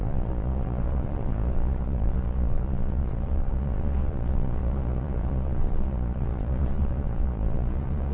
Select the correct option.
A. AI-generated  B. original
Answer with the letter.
A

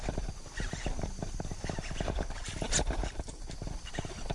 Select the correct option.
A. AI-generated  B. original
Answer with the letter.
B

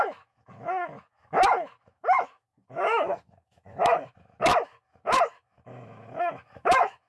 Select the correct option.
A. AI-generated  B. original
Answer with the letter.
A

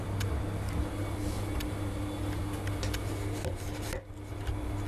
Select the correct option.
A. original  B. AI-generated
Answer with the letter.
A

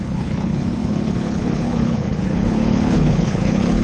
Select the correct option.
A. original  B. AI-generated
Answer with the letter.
B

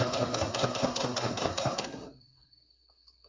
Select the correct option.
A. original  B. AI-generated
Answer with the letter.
B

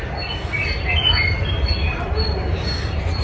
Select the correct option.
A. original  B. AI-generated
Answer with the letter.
A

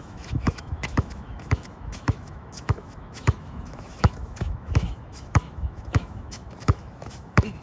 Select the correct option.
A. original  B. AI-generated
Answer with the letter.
B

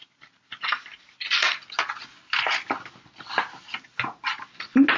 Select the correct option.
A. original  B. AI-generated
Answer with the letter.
A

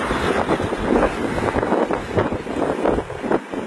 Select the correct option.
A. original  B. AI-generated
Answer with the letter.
A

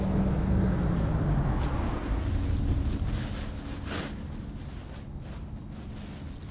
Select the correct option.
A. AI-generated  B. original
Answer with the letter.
B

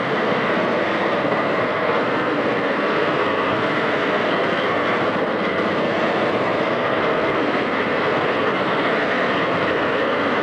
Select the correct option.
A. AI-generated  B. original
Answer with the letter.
A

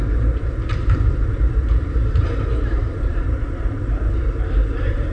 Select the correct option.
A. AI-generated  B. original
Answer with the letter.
A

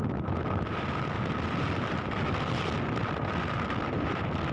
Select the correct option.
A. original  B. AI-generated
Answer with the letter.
A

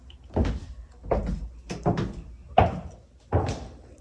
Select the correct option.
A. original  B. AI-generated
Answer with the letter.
A